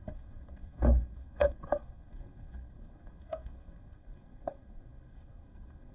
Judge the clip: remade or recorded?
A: remade